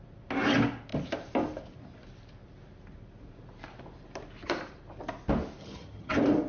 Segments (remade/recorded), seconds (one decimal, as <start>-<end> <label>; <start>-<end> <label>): 0.0-5.6 recorded; 5.6-6.1 remade; 6.1-6.5 recorded